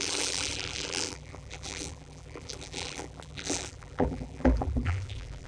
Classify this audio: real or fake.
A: fake